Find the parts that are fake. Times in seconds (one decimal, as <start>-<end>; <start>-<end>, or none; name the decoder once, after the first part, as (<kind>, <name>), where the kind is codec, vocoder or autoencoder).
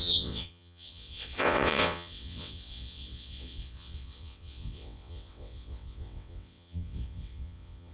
0.0-7.9 (vocoder, WaveNeXt)